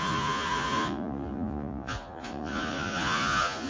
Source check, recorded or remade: remade